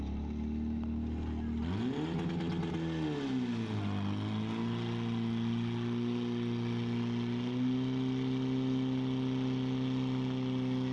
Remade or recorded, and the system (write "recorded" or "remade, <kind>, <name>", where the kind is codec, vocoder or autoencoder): recorded